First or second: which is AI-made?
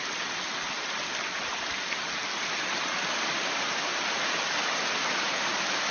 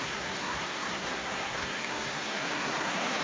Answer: second